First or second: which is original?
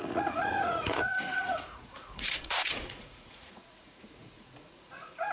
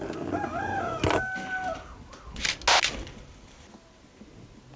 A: second